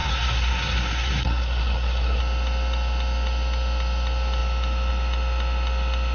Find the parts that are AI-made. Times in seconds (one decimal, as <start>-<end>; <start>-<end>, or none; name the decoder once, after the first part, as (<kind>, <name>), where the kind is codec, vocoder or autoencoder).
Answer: 0.0-2.2 (codec, SNAC)